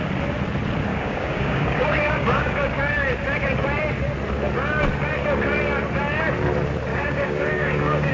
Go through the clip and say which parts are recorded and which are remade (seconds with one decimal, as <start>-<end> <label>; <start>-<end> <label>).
0.0-0.9 recorded; 0.9-2.6 remade; 2.6-6.9 recorded; 6.9-8.1 remade